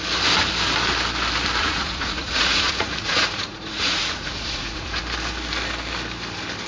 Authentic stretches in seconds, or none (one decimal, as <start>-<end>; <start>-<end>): 0.0-1.6; 5.0-6.7